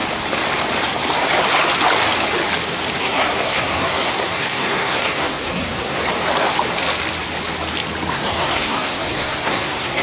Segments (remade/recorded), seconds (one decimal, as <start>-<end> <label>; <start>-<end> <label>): 0.0-3.0 recorded; 3.0-6.0 remade; 6.0-8.1 recorded; 8.1-10.0 remade